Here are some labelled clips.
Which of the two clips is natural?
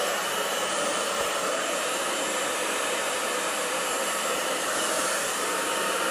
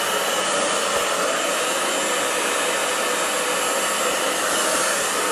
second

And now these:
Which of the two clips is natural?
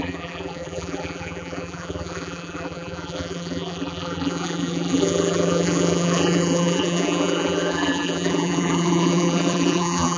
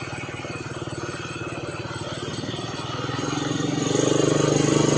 second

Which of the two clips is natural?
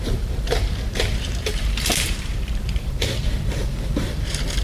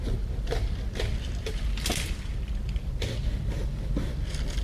second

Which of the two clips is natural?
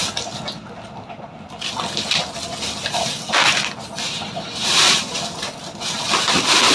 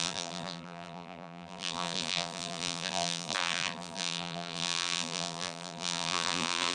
first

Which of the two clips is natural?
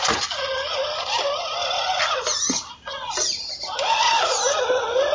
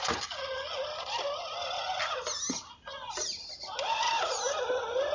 second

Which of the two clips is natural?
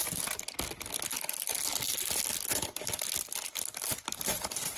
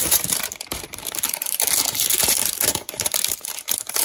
first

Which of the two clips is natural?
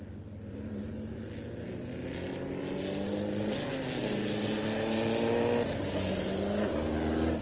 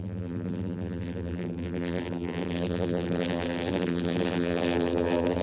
first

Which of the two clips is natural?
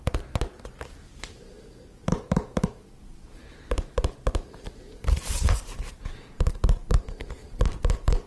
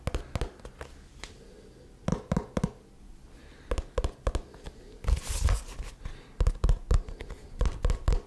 second